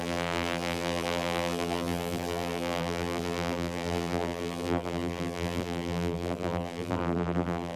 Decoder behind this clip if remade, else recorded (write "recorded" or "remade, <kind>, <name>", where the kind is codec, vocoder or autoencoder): remade, vocoder, BigVGAN v2